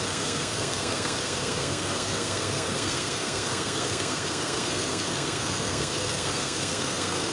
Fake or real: fake